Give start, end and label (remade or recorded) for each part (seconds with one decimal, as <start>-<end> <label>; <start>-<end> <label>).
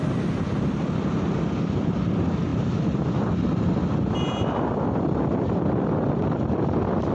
0.0-7.1 recorded